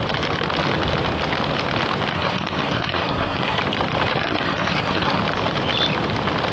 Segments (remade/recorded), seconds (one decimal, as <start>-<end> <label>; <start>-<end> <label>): 0.0-2.1 recorded; 2.1-3.6 remade; 3.6-4.1 recorded; 4.1-5.2 remade; 5.2-6.5 recorded

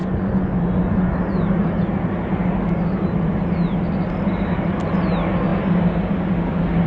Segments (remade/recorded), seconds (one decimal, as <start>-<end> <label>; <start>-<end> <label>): 0.0-1.1 remade; 1.1-6.9 recorded

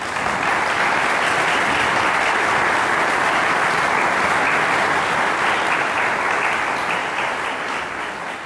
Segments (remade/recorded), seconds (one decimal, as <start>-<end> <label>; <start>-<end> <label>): 0.0-8.5 recorded

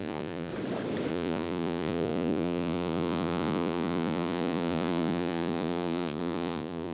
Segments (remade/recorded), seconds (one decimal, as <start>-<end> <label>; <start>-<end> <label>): 0.0-0.5 remade; 0.5-1.1 recorded; 1.1-6.9 remade

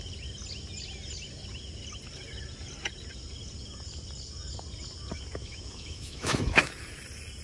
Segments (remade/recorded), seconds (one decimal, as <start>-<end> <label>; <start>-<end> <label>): 0.0-5.4 recorded; 5.4-6.7 remade; 6.7-7.4 recorded